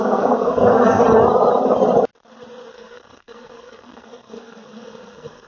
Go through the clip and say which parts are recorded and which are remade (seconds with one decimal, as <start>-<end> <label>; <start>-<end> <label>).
0.0-1.0 remade; 1.0-2.7 recorded; 2.7-5.5 remade